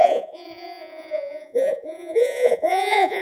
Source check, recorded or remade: remade